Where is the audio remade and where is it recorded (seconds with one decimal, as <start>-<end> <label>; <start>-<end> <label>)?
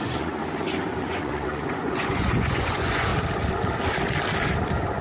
0.0-0.4 remade; 0.4-1.0 recorded; 1.0-3.1 remade; 3.1-5.0 recorded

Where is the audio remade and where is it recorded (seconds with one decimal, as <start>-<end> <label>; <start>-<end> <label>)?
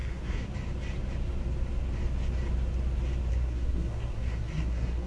0.0-0.5 remade; 0.5-3.3 recorded; 3.3-5.1 remade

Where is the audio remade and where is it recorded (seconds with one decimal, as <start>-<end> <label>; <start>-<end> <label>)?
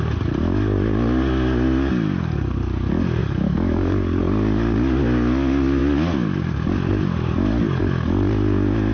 0.0-3.2 recorded; 3.2-4.2 remade; 4.2-8.9 recorded